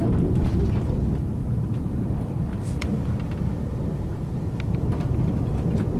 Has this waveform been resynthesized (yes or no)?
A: no